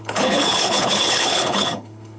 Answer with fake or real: fake